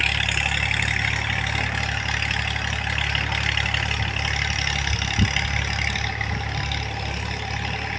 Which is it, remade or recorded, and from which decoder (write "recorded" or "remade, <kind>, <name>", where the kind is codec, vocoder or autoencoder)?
recorded